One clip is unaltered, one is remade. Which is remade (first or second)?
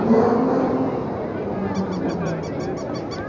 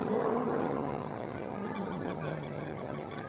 second